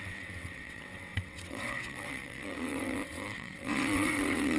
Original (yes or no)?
no